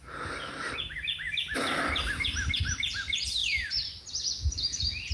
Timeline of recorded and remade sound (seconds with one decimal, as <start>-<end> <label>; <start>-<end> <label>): 0.0-3.4 recorded; 3.4-4.0 remade; 4.0-5.1 recorded